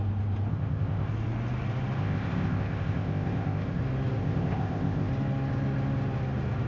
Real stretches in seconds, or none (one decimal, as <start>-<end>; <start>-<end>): 0.0-0.5; 1.1-2.0; 3.8-4.2; 5.1-6.7